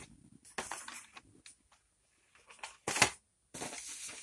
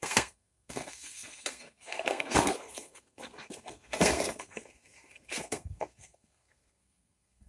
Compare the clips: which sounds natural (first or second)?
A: first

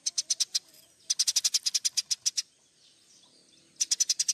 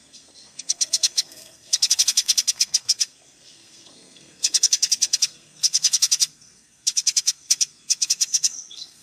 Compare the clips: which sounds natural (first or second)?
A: first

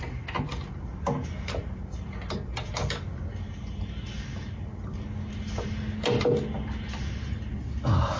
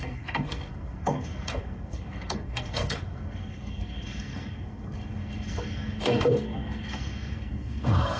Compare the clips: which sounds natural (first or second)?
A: first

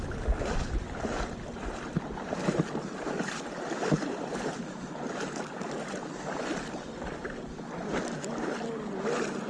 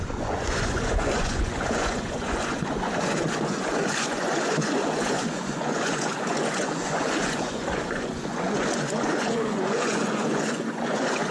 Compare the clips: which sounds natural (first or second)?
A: first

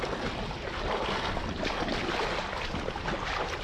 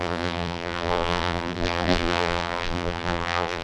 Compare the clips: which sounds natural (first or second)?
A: first